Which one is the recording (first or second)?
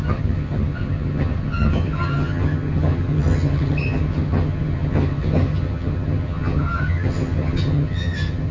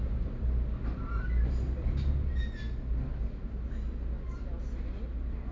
second